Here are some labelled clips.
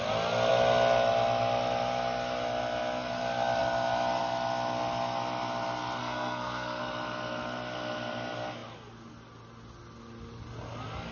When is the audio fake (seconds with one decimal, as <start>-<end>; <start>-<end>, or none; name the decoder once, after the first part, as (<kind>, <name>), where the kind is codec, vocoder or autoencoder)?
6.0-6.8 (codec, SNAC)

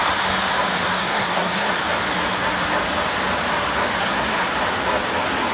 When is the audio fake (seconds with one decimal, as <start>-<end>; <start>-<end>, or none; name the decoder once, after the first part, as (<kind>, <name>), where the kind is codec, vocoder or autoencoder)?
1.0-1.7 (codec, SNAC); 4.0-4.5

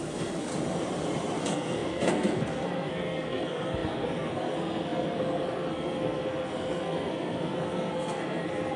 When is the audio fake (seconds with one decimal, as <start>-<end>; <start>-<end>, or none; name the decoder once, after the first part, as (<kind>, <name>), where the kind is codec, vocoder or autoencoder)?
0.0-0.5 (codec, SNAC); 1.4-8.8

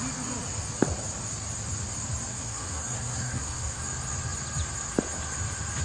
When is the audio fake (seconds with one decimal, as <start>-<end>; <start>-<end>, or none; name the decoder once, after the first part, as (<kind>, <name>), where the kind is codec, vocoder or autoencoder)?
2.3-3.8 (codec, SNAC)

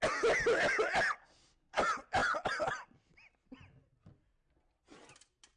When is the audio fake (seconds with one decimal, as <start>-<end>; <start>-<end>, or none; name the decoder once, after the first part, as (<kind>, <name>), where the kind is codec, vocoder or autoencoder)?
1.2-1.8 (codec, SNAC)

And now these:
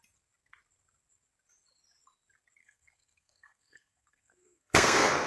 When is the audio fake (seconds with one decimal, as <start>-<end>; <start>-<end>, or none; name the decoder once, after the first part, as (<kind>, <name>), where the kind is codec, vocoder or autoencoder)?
2.6-5.3 (codec, SNAC)

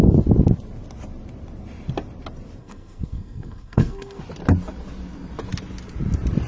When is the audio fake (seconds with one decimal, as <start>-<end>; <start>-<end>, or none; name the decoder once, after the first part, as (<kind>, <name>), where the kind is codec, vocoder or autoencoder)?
2.6-4.2 (codec, SNAC)

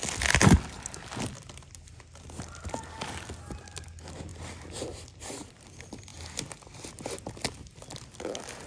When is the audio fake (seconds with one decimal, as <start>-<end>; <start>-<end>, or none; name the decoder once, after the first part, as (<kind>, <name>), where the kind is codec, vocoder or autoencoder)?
none